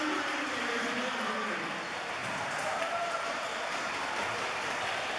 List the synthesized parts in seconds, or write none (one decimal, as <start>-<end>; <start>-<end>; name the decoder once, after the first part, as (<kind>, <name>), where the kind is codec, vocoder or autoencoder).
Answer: 2.2-4.8 (vocoder, BigVGAN v2)